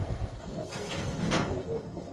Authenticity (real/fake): fake